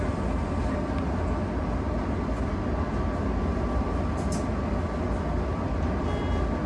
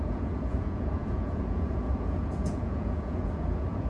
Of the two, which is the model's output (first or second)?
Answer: second